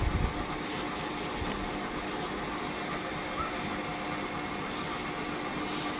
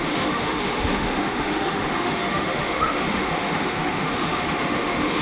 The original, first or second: first